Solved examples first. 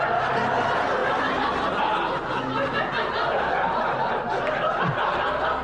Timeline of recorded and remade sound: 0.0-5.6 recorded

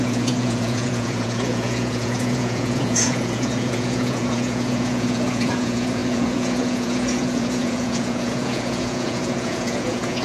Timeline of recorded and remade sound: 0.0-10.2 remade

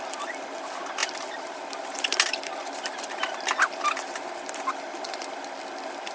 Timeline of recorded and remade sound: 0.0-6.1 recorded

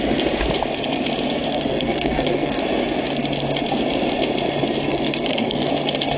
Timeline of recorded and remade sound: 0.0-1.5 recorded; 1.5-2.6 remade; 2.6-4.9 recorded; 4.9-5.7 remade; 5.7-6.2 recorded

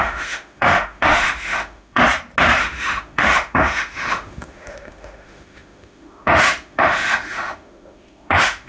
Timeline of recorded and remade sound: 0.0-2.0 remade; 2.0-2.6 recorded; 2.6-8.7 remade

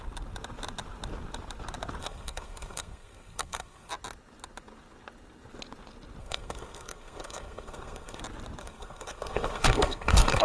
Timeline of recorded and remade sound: 0.0-2.0 recorded; 2.0-3.9 remade; 3.9-6.2 recorded; 6.2-8.2 remade; 8.2-8.6 recorded; 8.6-10.4 remade

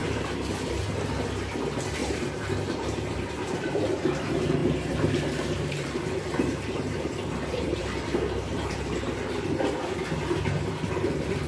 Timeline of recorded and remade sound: 0.0-0.7 remade; 0.7-2.0 recorded; 2.0-3.9 remade; 3.9-4.6 recorded; 4.6-9.6 remade; 9.6-11.5 recorded

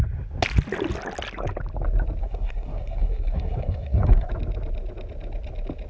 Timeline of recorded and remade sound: 0.0-2.2 recorded; 2.2-4.3 remade; 4.3-5.9 recorded